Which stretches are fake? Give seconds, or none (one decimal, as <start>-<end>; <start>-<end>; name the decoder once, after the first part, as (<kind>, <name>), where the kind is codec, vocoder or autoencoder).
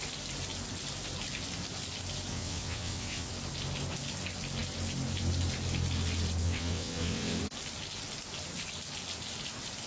2.3-3.3 (vocoder, WaveNeXt); 6.4-7.4